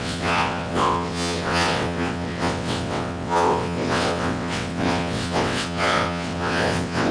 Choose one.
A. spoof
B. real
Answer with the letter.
A